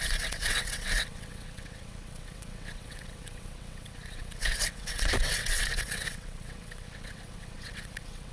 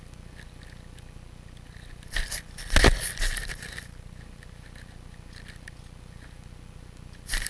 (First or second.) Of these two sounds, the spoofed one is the first